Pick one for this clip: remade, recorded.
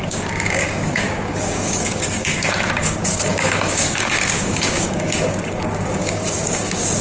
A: remade